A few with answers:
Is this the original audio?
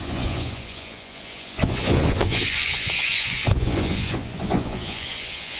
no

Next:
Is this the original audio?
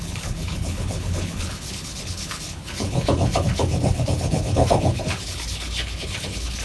no